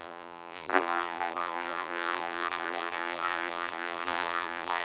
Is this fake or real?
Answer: fake